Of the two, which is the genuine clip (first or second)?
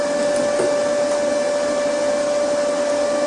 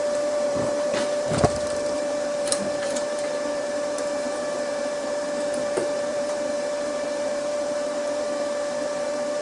first